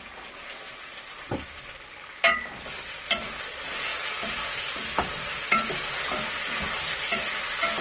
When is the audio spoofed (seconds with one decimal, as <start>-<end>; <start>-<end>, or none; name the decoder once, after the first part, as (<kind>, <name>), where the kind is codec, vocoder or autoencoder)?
none